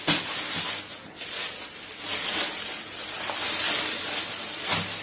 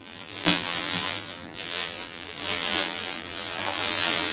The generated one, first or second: second